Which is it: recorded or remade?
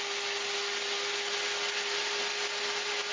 recorded